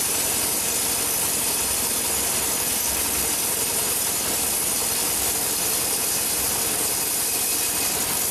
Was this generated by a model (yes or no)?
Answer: yes